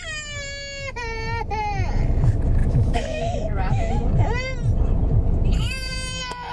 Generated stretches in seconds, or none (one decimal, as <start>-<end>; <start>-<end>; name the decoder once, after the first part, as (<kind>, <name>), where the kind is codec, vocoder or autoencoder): 2.6-3.9 (autoencoder, DAC-VAE)